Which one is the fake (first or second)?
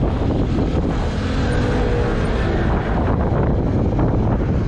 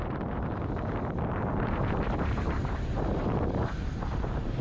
second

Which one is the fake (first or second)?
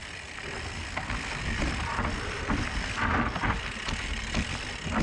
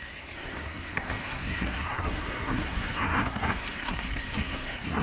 second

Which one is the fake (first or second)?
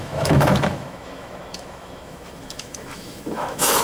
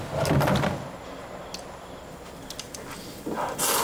first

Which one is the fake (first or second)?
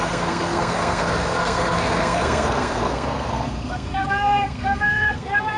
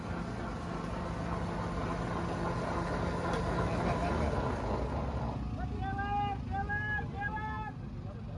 first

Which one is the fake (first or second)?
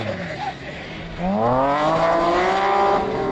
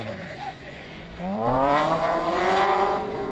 second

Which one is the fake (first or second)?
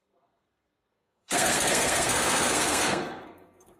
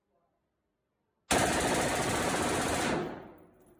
first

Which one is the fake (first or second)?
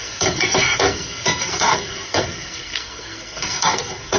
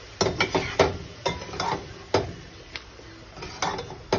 first